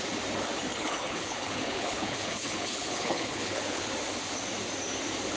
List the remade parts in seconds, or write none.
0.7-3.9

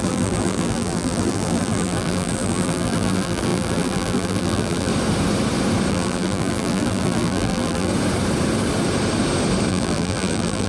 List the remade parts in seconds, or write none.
0.0-4.9; 5.9-7.9; 9.7-10.7

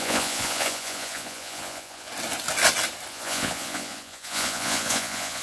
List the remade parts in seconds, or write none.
0.0-2.1; 3.1-5.4

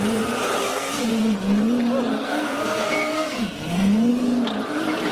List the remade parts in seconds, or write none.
0.6-1.1; 2.1-4.1